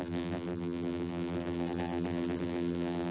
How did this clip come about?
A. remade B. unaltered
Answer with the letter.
A